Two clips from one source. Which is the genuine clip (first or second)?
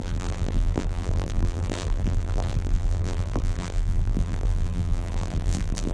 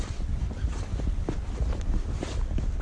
second